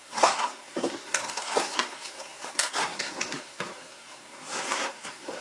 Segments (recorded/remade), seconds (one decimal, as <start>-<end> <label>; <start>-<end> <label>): 0.0-5.4 remade